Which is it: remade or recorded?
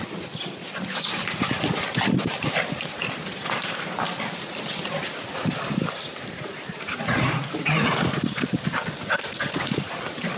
recorded